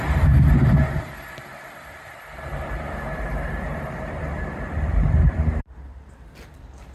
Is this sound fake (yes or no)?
yes